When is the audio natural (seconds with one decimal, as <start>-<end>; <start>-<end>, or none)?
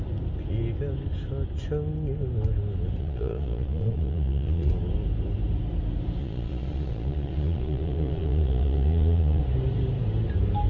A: 0.0-3.0; 4.7-6.2; 9.4-10.7